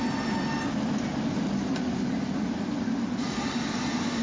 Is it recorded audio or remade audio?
recorded